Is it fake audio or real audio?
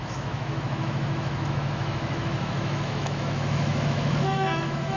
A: fake